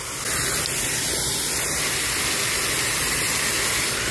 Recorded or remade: recorded